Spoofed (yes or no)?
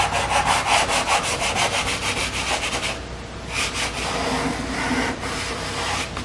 no